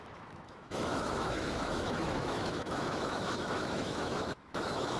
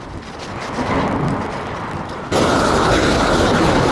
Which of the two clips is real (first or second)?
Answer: second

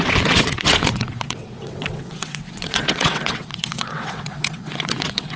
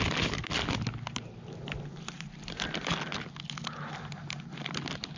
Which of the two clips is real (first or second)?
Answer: second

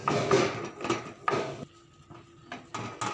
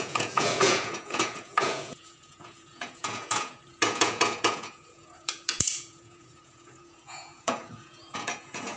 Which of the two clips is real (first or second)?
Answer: first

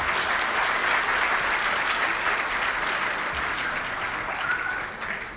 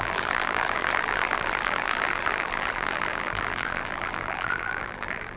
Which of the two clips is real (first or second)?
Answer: first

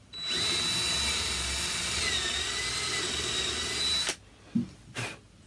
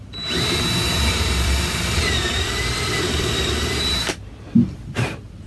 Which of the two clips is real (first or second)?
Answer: first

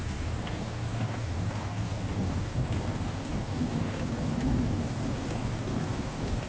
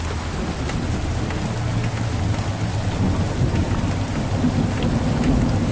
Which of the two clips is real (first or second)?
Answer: second